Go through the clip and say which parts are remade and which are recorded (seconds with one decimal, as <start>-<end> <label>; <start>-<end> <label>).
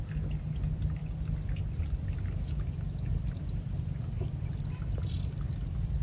0.0-6.0 recorded